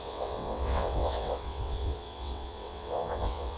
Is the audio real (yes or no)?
no